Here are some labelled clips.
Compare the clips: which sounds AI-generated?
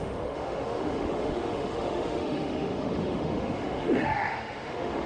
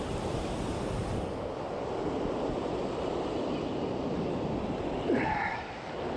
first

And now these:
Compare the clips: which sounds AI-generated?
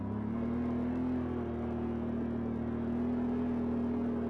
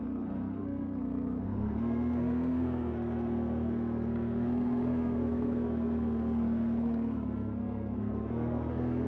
second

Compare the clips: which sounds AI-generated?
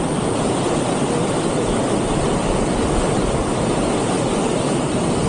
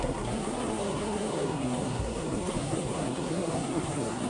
second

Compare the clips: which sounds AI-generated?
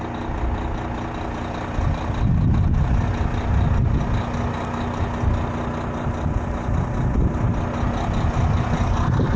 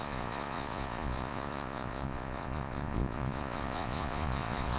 second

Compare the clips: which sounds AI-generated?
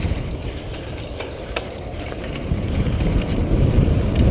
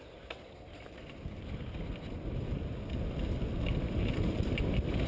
first